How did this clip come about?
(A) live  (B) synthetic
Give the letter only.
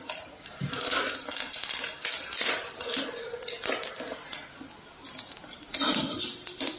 A